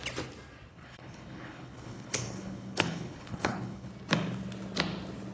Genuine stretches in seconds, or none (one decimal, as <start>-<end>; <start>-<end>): 0.0-0.7; 3.9-5.3